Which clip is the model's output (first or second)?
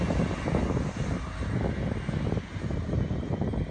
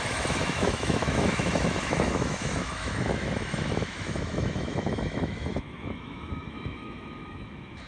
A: second